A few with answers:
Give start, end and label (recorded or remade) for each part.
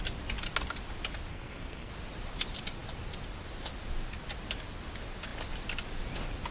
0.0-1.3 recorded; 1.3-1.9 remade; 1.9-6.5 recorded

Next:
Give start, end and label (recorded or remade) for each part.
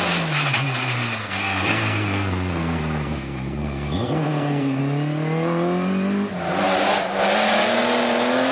0.0-1.2 recorded; 1.2-4.8 remade; 4.8-8.5 recorded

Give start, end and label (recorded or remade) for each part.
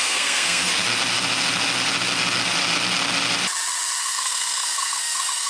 0.0-0.7 remade; 0.7-4.0 recorded; 4.0-5.5 remade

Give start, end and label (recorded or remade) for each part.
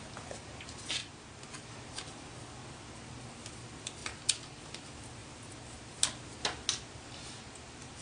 0.0-8.0 recorded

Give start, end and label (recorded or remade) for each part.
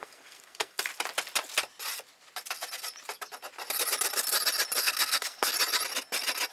0.0-0.9 remade; 0.9-4.8 recorded; 4.8-5.5 remade; 5.5-6.5 recorded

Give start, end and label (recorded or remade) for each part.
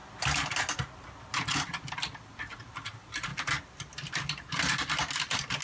0.0-5.6 recorded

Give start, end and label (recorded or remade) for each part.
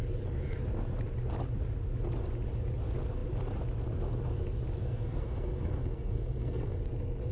0.0-4.8 recorded; 4.8-6.8 remade; 6.8-7.3 recorded